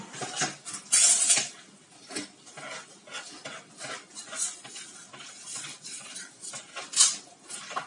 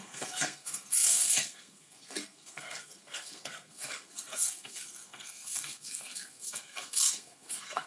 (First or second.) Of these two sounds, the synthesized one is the second